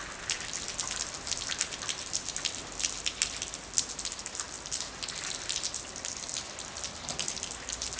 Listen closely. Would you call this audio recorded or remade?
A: recorded